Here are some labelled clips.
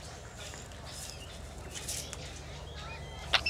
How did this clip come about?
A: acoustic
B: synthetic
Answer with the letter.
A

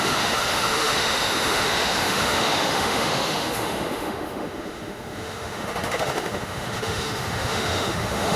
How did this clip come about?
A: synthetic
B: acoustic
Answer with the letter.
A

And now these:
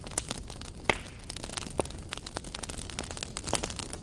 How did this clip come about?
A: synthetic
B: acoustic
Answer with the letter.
B